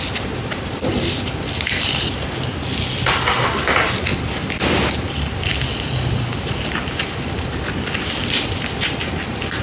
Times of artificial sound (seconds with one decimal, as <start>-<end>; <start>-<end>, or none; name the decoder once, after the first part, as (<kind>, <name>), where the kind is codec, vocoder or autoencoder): none